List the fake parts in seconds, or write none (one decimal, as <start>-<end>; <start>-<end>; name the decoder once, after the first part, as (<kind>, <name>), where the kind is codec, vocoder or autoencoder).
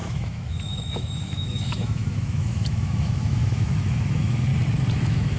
0.0-4.5 (autoencoder, DAC-VAE); 5.0-5.4